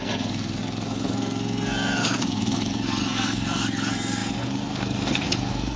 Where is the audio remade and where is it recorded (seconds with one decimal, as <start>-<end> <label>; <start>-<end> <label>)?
0.0-5.8 remade